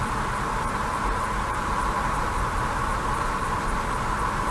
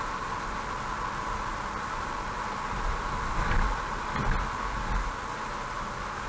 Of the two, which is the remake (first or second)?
first